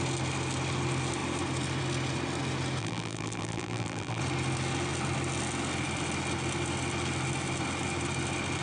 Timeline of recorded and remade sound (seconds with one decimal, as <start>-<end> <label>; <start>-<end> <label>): 0.0-2.8 recorded; 2.8-4.2 remade; 4.2-8.6 recorded